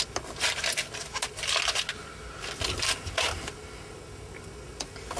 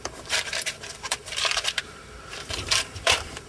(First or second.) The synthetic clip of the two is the second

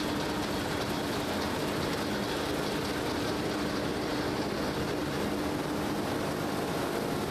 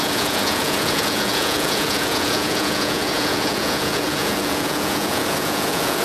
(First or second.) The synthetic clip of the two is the second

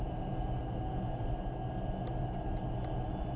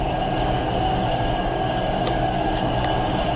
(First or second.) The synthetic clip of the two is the second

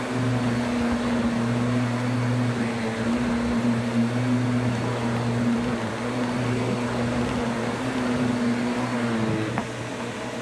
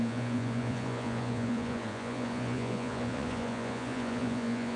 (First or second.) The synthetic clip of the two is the second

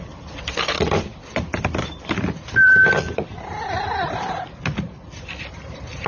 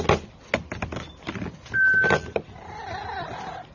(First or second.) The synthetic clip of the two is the first